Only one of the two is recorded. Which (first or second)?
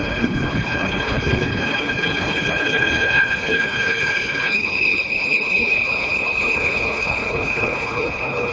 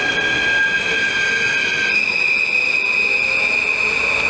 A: second